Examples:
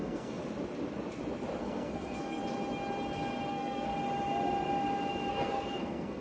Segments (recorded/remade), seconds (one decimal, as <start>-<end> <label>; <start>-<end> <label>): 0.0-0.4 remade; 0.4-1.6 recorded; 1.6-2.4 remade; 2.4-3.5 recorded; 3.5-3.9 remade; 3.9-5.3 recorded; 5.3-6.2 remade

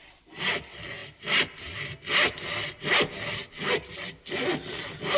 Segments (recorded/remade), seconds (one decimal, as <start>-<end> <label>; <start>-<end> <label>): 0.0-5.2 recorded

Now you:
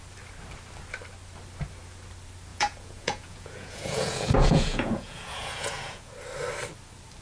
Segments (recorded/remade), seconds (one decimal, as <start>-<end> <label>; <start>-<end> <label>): 0.0-2.5 recorded; 2.5-6.1 remade; 6.1-7.2 recorded

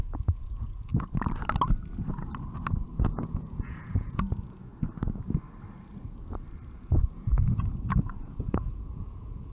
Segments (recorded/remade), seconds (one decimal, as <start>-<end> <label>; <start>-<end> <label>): 0.0-0.9 remade; 0.9-2.9 recorded; 2.9-4.7 remade; 4.7-6.8 recorded; 6.8-9.5 remade